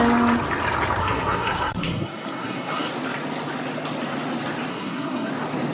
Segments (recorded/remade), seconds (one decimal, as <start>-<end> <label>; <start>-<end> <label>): 0.0-1.0 recorded; 1.0-2.9 remade; 2.9-4.7 recorded; 4.7-5.3 remade; 5.3-5.7 recorded